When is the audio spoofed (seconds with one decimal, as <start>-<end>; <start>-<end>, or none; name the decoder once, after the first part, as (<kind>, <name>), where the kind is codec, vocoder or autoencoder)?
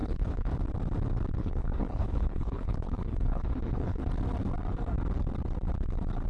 0.0-0.5 (codec, HILCodec); 1.4-4.1